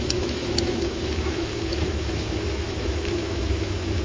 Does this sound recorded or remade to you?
remade